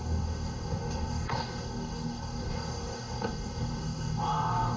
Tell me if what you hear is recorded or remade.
remade